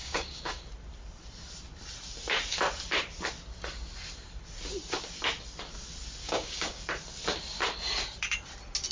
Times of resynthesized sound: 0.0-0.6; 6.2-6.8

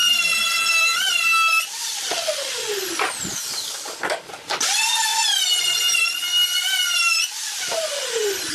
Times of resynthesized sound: 3.3-4.3